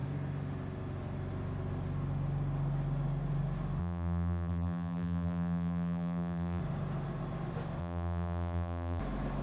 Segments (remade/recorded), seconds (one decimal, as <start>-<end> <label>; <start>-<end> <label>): 0.0-3.8 recorded; 3.8-6.6 remade; 6.6-7.8 recorded; 7.8-9.0 remade; 9.0-9.4 recorded